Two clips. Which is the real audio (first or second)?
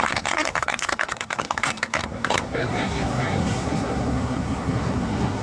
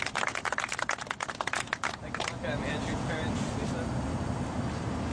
second